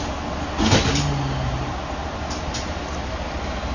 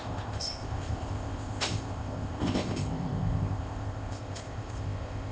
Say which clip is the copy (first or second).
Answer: second